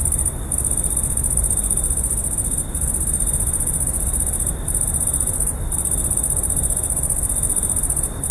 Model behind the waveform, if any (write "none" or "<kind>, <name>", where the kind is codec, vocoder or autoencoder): none